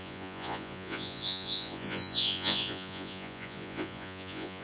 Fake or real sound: fake